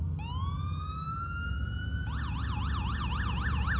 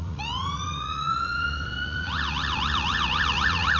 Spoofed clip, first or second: second